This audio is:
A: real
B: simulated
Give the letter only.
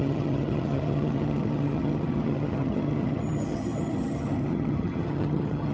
B